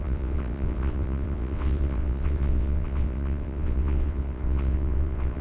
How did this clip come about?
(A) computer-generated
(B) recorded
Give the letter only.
A